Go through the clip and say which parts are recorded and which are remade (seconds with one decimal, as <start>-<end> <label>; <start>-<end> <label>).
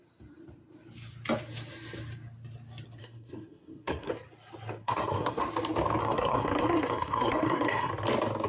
0.0-3.0 recorded; 3.0-4.1 remade; 4.1-4.8 recorded; 4.8-5.4 remade; 5.4-6.0 recorded; 6.0-7.9 remade; 7.9-8.5 recorded